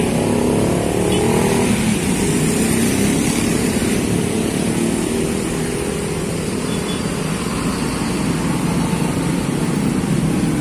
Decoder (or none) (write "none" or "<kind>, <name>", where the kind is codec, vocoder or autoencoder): none